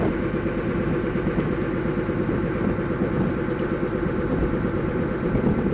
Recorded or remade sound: recorded